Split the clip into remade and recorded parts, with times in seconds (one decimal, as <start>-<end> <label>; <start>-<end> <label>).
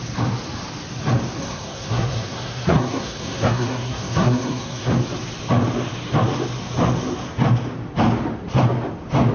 0.0-1.4 recorded; 1.4-4.9 remade; 4.9-9.3 recorded